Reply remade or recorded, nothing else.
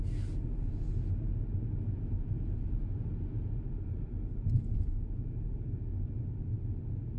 recorded